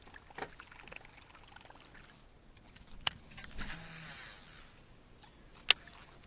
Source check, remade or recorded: recorded